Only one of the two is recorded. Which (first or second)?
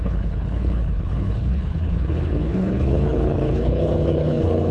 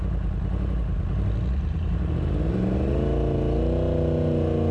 second